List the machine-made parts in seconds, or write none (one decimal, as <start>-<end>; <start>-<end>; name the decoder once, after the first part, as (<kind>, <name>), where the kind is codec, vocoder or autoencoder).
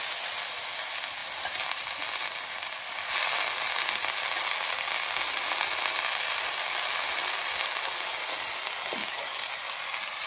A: 9.0-9.5 (codec, DAC)